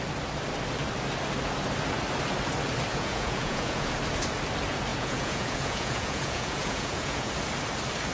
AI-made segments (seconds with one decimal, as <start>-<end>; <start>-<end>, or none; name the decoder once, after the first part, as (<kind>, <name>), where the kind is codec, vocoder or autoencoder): 2.9-3.9 (vocoder, Vocos); 4.9-7.3